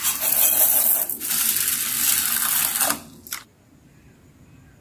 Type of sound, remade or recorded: recorded